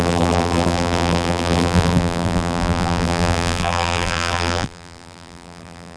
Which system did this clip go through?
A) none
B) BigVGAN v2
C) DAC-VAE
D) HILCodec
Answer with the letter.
B